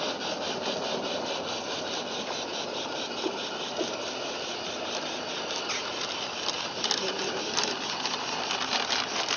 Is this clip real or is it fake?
real